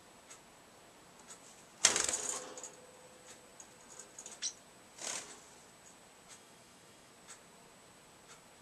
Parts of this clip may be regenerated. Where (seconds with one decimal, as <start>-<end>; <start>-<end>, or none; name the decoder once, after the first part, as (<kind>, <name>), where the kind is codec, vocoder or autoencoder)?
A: 6.3-7.1 (autoencoder, DAC-VAE)